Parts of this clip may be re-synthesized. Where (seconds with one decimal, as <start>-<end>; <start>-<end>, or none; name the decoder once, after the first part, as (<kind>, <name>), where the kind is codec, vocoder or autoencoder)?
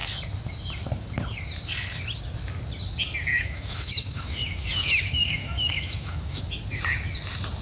3.3-6.4 (autoencoder, DAC-VAE)